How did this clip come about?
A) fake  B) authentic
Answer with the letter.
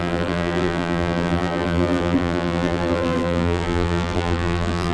A